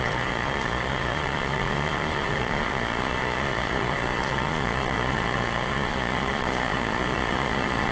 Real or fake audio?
fake